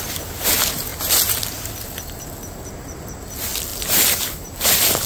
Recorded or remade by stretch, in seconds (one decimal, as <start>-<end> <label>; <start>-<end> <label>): 0.0-5.1 recorded